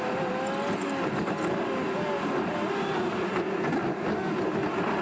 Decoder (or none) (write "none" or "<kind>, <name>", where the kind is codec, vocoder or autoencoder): none